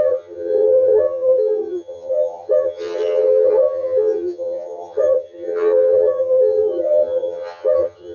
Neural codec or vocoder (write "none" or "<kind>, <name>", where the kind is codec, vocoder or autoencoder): vocoder, HiFi-GAN